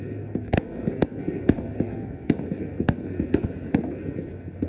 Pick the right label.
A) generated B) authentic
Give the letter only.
A